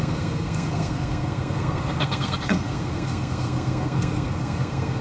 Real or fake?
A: fake